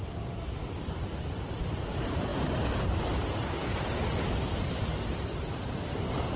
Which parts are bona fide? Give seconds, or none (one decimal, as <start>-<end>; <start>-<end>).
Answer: none